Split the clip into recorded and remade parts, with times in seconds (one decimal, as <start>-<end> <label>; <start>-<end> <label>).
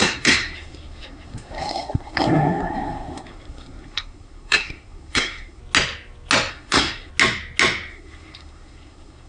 0.0-5.6 remade; 5.6-6.5 recorded; 6.5-7.1 remade; 7.1-7.9 recorded; 7.9-9.3 remade